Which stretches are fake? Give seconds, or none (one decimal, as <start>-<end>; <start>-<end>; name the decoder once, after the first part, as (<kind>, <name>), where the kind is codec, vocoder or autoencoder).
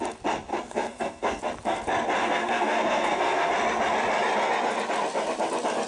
0.5-1.4 (codec, SNAC); 2.2-3.5